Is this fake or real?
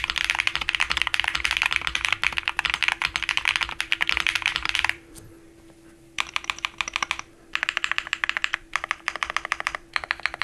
fake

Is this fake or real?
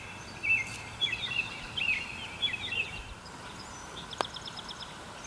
fake